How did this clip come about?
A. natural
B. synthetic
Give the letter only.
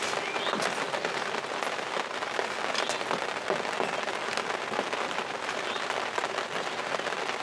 A